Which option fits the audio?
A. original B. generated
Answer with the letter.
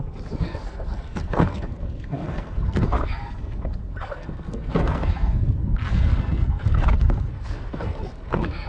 B